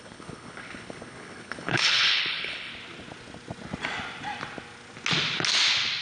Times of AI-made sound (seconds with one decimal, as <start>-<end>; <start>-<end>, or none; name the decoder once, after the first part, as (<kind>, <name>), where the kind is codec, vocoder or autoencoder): 0.0-2.7 (codec, HILCodec)